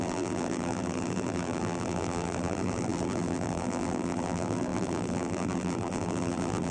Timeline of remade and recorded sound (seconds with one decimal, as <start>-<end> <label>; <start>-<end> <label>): 0.0-6.7 remade